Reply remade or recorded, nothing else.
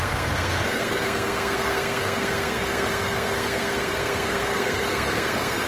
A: remade